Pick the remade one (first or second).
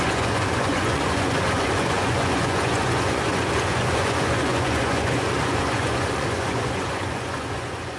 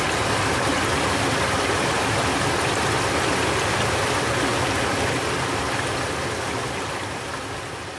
first